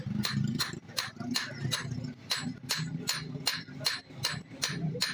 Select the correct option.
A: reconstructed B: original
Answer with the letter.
B